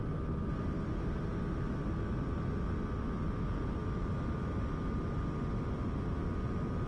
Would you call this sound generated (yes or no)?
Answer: no